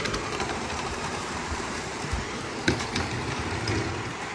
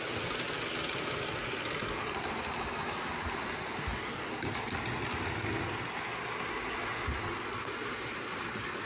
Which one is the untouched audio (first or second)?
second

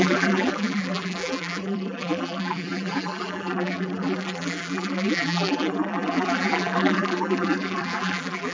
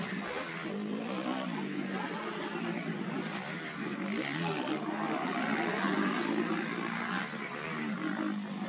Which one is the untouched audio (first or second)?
second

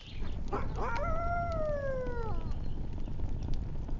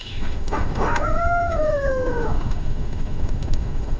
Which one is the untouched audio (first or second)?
first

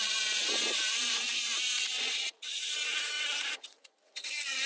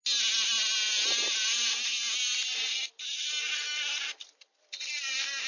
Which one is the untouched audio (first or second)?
second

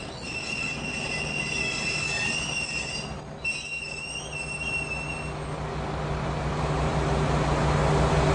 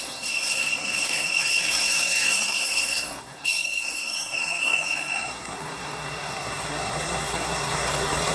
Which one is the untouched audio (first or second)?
first